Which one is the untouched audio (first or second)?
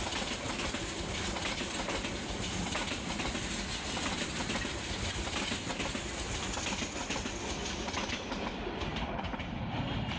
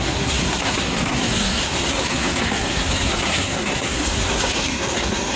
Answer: first